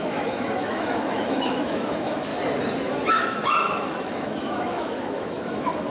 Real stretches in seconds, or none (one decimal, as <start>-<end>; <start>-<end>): 2.3-3.1